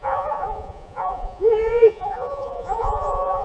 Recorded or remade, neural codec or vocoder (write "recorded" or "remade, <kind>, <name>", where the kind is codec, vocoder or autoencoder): remade, vocoder, Vocos